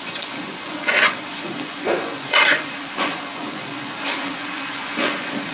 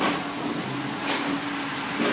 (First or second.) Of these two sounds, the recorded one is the second